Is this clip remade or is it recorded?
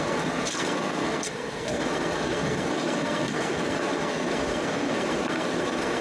remade